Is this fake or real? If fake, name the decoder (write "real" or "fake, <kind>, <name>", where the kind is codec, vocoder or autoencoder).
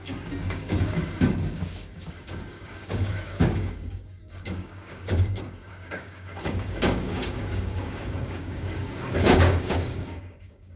fake, codec, DAC